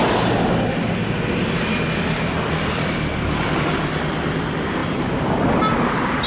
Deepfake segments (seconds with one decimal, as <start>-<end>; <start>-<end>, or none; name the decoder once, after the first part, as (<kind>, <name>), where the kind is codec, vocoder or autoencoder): none